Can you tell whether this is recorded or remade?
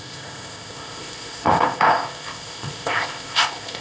remade